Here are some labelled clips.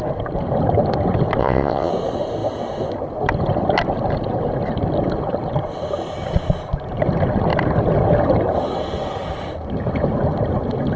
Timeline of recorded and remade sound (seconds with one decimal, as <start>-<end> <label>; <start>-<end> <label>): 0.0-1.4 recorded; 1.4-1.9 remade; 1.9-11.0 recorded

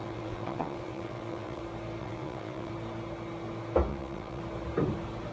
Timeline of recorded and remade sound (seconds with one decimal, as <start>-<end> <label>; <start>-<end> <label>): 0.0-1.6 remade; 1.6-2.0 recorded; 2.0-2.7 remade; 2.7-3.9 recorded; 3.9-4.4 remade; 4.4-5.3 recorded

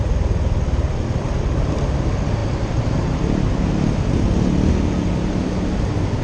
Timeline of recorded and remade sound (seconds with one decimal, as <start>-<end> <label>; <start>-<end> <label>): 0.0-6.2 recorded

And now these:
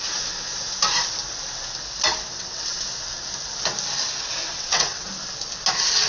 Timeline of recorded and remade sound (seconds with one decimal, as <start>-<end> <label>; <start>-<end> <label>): 0.0-2.3 recorded; 2.3-2.8 remade; 2.8-4.5 recorded; 4.5-5.1 remade; 5.1-6.1 recorded